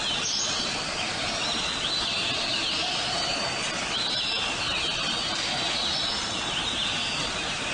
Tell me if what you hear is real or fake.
real